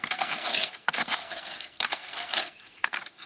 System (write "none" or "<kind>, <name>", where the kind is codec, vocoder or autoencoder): codec, SNAC